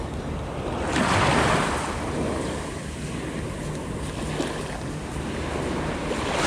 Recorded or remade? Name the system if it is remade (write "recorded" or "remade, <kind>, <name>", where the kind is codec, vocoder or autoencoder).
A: recorded